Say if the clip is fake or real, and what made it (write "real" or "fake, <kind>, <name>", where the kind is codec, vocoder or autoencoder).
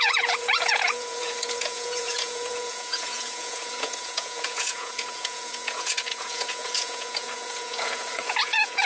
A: fake, vocoder, Vocos